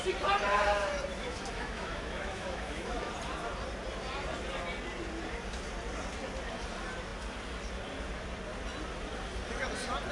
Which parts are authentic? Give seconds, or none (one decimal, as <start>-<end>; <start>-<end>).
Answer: 0.0-1.1; 3.1-10.1